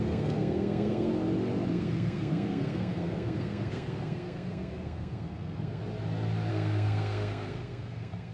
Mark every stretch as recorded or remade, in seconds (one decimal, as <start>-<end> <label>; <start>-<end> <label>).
0.0-1.1 remade; 1.1-1.7 recorded; 1.7-5.8 remade; 5.8-6.5 recorded; 6.5-8.3 remade